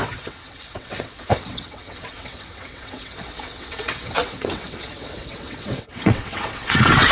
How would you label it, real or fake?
fake